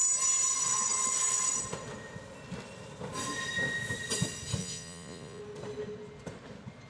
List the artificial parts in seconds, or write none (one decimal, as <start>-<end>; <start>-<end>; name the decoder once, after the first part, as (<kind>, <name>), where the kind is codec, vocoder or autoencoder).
4.6-5.4 (vocoder, Vocos)